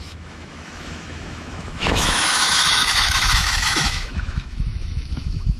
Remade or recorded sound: remade